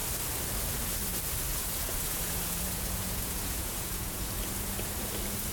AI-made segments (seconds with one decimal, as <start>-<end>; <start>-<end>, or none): 1.5-4.3